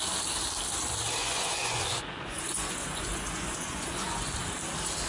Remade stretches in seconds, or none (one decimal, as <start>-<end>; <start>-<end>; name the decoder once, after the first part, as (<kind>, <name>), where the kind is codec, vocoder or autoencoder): 1.2-4.3 (vocoder, Vocos)